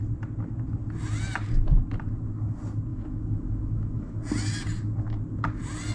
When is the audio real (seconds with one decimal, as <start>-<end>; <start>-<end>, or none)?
0.0-2.9; 4.2-5.9